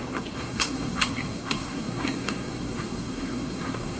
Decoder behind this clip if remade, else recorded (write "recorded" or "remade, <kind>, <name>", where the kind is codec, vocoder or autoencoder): remade, codec, SNAC